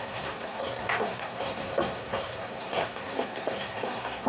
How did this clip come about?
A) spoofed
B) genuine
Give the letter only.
A